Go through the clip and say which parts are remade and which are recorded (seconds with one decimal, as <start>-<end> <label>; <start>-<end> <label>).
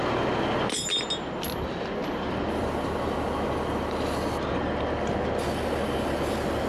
0.0-6.7 recorded